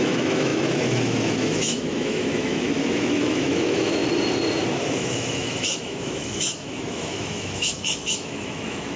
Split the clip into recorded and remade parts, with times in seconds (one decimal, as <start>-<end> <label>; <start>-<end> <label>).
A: 0.0-4.0 remade; 4.0-4.9 recorded; 4.9-9.0 remade